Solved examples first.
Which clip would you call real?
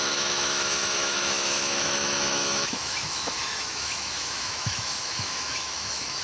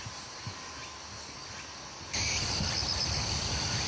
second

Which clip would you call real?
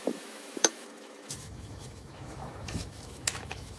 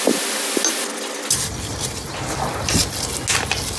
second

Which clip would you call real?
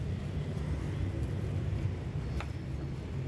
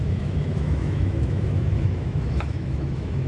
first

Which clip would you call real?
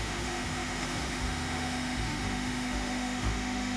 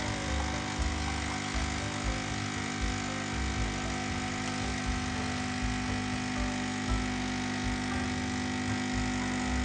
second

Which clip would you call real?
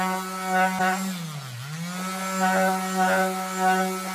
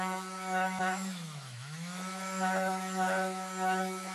first